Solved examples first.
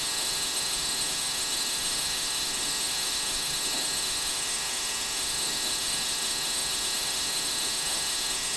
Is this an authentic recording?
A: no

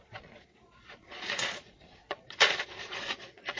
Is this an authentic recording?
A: no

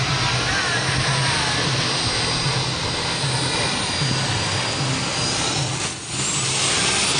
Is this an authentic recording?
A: yes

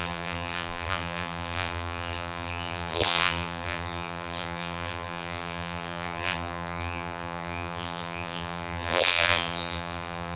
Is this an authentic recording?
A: no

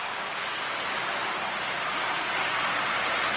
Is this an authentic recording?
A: yes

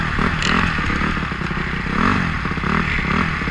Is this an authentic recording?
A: yes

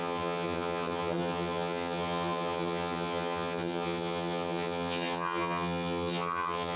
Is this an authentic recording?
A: no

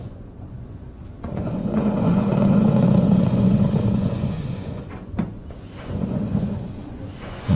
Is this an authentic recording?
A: no